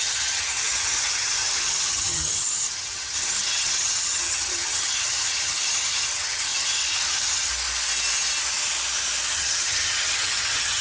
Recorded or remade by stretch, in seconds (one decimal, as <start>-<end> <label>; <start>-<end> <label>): 0.0-7.5 remade; 7.5-9.3 recorded; 9.3-10.8 remade